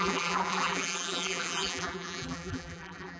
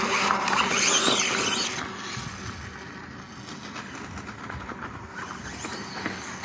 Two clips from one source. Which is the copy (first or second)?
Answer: first